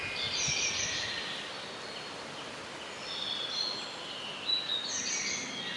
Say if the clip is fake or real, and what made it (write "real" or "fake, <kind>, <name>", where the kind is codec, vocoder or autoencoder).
real